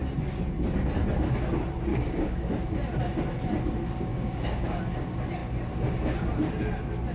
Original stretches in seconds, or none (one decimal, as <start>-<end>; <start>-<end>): 0.0-1.9; 2.5-4.1; 4.8-7.1